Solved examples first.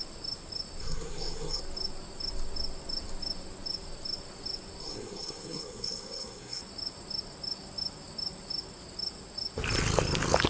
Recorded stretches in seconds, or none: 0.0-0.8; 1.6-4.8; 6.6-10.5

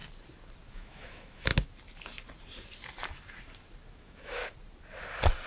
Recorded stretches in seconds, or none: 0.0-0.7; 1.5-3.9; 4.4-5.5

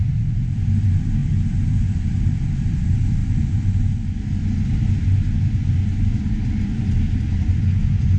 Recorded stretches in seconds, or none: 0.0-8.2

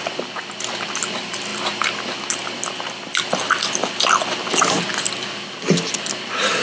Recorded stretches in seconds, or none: 0.0-6.6

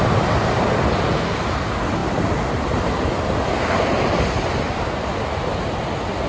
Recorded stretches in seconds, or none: 0.0-2.0; 3.5-6.3

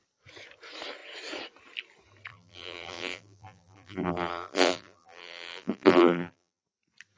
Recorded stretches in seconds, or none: 0.0-2.3; 6.6-7.2

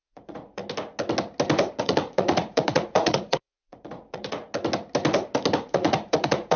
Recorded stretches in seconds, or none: 0.6-1.8; 4.4-5.6

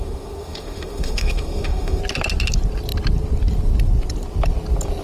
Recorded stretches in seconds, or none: 2.0-5.0